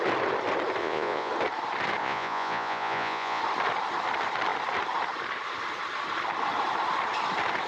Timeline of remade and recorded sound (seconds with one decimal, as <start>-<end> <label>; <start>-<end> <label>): 0.0-0.8 recorded; 0.8-1.3 remade; 1.3-2.0 recorded; 2.0-3.4 remade; 3.4-7.7 recorded